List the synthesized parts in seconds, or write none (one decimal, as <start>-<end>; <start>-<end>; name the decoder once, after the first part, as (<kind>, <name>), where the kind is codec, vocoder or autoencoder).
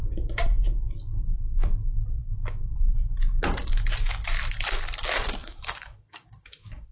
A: 5.4-6.9 (autoencoder, DAC-VAE)